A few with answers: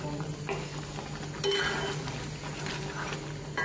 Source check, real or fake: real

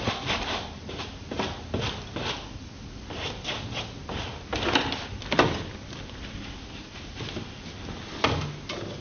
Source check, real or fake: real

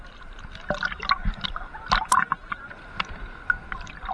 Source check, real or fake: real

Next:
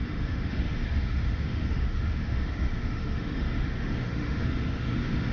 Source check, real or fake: fake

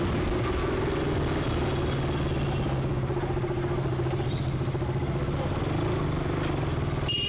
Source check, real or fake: real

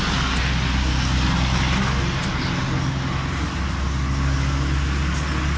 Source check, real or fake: real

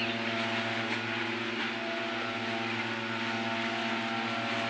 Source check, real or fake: real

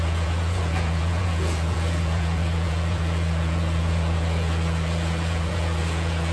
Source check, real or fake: fake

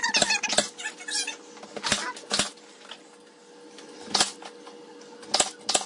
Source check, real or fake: real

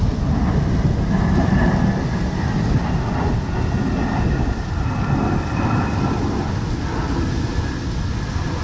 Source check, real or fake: real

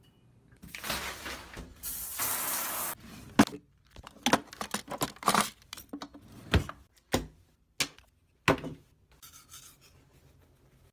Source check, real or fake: real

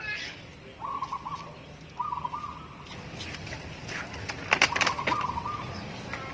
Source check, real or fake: real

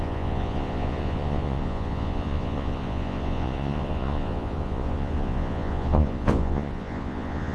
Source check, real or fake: fake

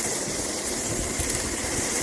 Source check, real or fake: real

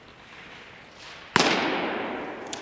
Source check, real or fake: real